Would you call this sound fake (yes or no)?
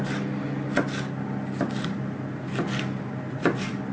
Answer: no